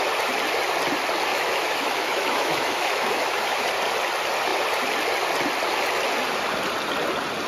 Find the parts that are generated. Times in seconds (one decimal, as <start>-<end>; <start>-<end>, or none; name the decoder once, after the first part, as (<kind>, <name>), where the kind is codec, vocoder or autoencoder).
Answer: 1.3-3.7 (autoencoder, DAC-VAE)